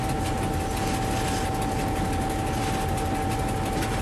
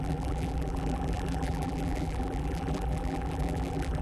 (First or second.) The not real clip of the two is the second